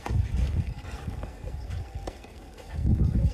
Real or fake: fake